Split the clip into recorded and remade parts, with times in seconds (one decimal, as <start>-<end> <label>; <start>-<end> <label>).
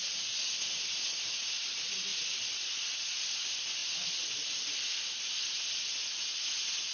0.0-2.1 recorded; 2.1-3.2 remade; 3.2-3.8 recorded; 3.8-6.0 remade; 6.0-6.9 recorded